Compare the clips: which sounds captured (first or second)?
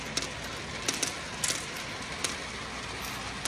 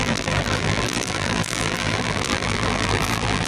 first